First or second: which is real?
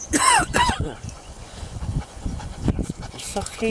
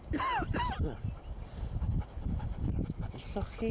second